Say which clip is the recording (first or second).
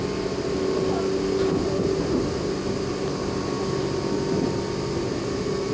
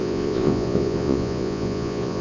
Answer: first